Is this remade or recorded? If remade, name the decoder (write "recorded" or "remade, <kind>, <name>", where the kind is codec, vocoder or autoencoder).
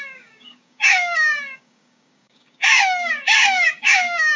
remade, codec, DAC